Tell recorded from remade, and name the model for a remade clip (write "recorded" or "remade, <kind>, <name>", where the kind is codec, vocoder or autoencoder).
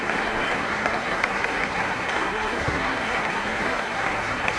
remade, codec, SNAC